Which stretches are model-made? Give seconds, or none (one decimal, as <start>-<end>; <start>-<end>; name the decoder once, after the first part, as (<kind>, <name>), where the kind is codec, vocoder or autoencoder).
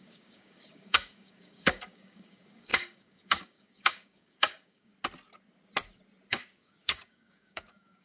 0.0-4.9 (codec, DAC); 6.3-8.0